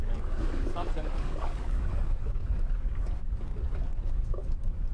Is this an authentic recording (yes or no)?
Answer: no